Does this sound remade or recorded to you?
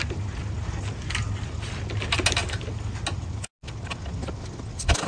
recorded